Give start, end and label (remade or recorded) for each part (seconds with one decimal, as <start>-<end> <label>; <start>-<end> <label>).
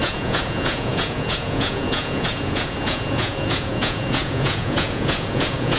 0.0-5.8 remade